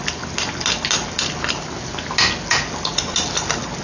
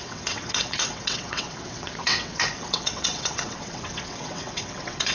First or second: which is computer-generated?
second